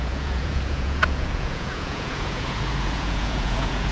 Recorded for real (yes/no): no